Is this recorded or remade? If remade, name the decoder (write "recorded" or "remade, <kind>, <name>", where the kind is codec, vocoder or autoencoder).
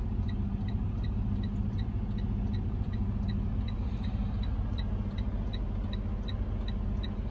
recorded